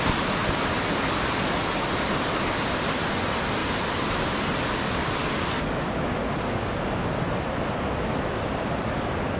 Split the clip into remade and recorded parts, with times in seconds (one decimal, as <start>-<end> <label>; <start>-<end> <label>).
0.0-9.4 recorded